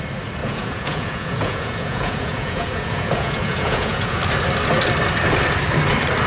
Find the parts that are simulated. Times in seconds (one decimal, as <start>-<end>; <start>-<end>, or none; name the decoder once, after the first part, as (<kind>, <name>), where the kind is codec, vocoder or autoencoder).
0.4-4.2 (vocoder, Vocos)

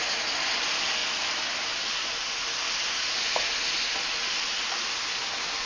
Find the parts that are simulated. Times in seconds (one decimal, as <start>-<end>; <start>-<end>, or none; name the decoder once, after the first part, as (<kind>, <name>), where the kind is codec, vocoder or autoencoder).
none

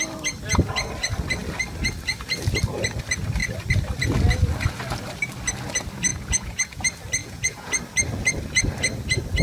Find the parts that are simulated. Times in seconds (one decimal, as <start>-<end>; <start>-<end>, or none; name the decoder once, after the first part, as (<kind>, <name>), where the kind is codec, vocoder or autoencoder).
6.1-6.8 (vocoder, Vocos); 7.2-7.8